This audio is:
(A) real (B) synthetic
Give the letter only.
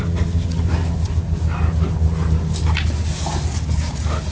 A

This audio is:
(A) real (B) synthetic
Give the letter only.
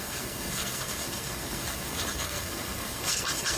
B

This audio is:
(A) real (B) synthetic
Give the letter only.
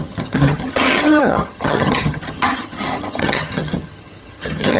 B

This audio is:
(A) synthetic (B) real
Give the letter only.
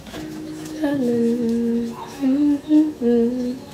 A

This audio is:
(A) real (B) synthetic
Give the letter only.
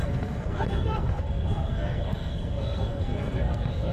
B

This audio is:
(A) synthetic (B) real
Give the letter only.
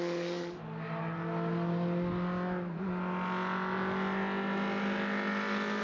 B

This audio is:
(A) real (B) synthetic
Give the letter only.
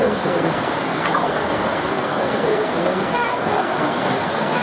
B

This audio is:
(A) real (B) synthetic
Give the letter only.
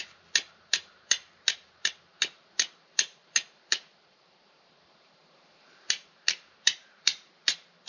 B